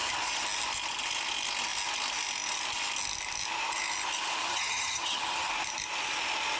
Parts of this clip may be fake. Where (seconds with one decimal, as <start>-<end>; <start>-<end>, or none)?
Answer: 4.4-5.5